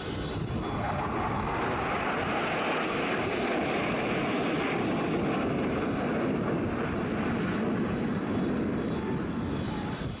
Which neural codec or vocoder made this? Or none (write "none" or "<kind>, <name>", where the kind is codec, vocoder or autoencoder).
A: none